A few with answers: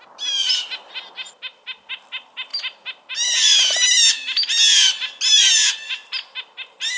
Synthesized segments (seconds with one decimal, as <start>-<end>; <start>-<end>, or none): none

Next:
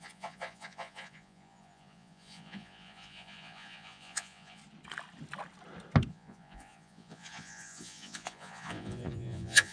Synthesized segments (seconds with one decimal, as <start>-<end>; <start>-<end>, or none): 0.0-4.6; 6.1-9.7

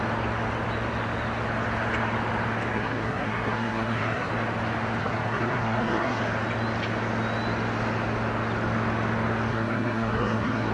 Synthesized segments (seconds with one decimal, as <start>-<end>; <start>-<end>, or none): 2.7-4.3; 5.0-6.2; 9.5-10.7

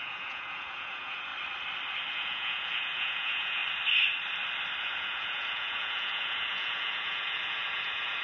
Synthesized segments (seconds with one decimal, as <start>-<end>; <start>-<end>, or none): 0.0-1.3; 2.1-3.6; 4.8-8.2